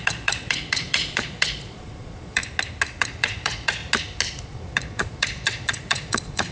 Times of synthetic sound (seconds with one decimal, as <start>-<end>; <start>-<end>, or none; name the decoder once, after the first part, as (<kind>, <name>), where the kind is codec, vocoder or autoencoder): 0.0-2.4 (vocoder, Vocos); 3.0-3.8; 4.4-6.5